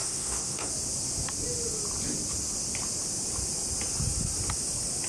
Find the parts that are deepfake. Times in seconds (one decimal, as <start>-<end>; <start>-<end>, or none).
0.0-0.7